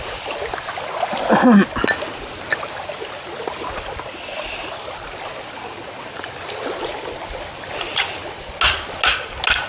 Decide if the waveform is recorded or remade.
recorded